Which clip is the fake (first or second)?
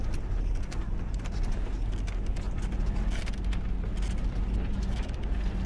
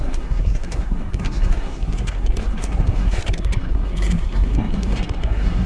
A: second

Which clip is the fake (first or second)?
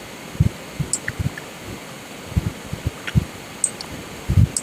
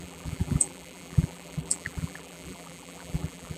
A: second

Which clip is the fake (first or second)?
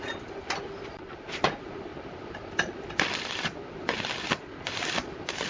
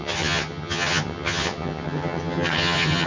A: second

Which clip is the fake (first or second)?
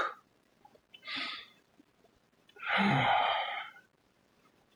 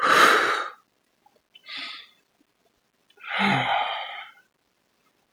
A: first